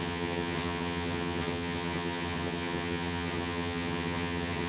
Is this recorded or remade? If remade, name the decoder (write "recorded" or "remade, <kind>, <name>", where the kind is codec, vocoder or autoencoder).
remade, vocoder, HiFi-GAN